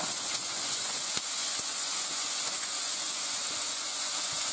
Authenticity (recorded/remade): remade